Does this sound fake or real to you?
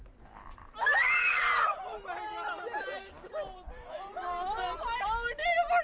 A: real